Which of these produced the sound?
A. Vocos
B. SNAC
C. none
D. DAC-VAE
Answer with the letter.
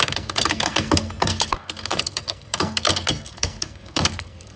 B